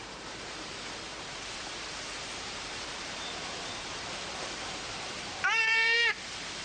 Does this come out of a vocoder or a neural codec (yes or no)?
yes